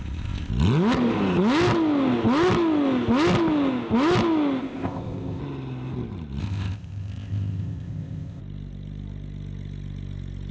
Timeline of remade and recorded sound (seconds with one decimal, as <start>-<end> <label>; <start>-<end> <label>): 0.0-0.5 remade; 0.5-4.6 recorded; 4.6-5.4 remade; 5.4-6.4 recorded; 6.4-8.4 remade; 8.4-10.5 recorded